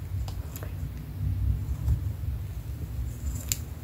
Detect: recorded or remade recorded